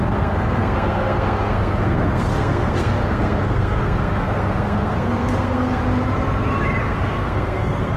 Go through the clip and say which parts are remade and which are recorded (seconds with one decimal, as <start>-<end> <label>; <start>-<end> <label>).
0.0-5.8 remade; 5.8-6.8 recorded; 6.8-8.0 remade